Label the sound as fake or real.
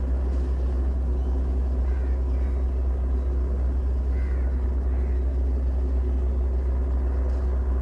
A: real